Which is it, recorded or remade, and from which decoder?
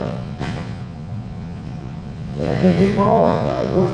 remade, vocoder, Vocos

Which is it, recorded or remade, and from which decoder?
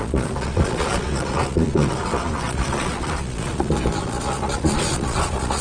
remade, vocoder, Vocos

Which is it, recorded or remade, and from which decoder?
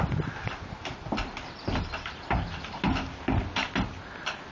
recorded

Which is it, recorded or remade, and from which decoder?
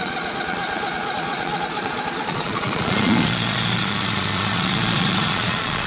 remade, vocoder, Vocos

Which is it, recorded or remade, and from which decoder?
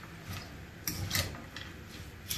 recorded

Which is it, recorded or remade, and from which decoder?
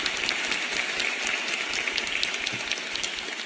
recorded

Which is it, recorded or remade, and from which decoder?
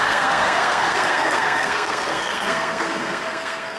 remade, codec, SNAC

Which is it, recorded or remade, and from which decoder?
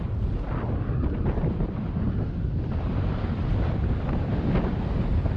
recorded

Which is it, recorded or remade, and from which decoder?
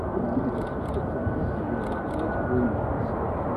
recorded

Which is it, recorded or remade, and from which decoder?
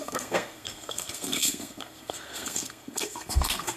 remade, codec, SNAC